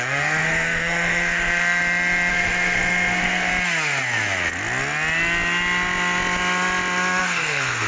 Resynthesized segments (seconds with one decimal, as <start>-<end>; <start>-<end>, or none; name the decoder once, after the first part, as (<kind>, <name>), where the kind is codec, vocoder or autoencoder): 0.0-1.8 (codec, SNAC); 2.3-3.5; 7.2-7.9